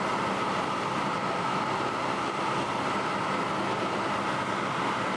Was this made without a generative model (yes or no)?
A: yes